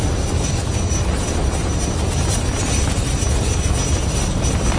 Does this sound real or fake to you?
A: real